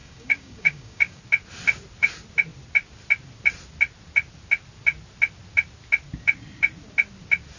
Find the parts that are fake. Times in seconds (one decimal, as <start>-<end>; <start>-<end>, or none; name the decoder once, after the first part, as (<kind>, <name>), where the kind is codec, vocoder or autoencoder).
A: 0.0-1.2 (codec, DAC)